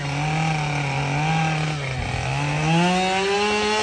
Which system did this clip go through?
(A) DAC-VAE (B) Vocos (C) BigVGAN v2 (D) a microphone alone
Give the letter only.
D